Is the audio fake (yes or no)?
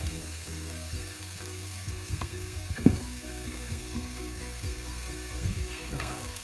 yes